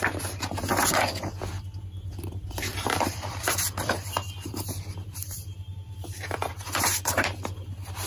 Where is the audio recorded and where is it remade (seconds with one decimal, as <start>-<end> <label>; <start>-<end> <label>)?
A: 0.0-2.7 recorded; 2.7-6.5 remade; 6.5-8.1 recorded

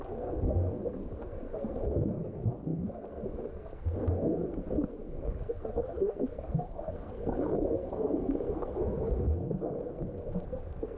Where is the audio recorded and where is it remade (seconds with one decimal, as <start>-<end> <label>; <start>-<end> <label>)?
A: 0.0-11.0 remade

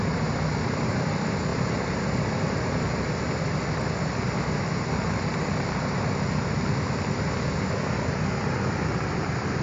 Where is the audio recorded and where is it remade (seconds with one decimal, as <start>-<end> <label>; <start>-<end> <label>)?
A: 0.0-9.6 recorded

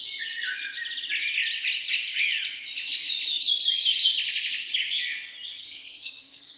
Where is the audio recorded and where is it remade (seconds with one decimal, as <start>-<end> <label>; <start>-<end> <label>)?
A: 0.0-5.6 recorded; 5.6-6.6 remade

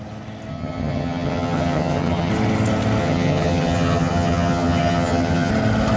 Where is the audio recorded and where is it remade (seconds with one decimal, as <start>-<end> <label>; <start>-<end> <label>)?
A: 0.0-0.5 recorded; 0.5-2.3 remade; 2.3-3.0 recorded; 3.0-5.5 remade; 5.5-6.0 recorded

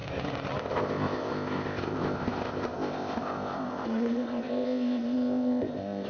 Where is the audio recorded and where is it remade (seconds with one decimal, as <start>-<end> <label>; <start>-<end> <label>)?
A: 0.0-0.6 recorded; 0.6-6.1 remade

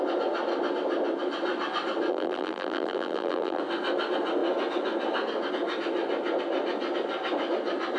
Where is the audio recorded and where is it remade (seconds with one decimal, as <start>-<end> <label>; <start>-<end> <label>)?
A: 0.0-2.1 recorded; 2.1-3.6 remade; 3.6-8.0 recorded

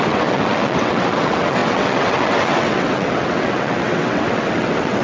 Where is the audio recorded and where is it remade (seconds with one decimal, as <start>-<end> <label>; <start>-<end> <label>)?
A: 0.0-5.0 remade